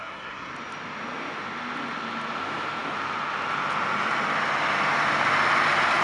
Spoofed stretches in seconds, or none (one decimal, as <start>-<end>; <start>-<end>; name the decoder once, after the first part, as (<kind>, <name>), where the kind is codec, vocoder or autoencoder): 0.0-0.5 (codec, SNAC)